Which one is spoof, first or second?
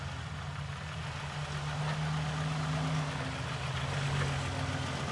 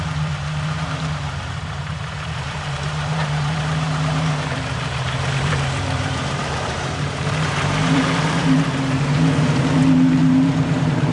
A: second